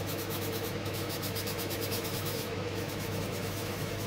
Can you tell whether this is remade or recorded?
remade